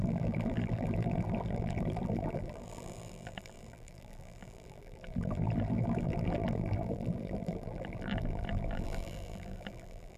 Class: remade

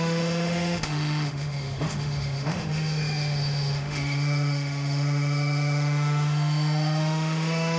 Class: remade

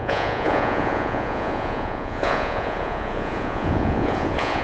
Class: remade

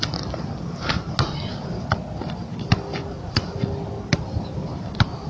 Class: recorded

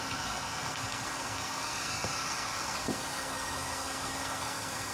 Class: remade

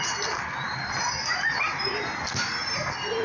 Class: recorded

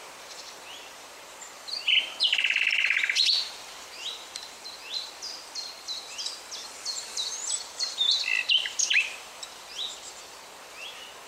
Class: remade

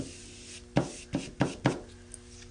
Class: recorded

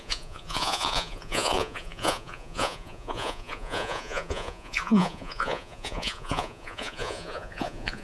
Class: remade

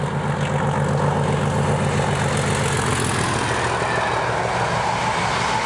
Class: recorded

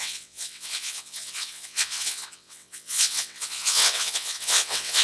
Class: remade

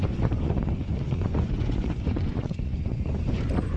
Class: remade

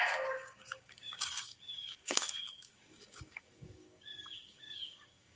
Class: remade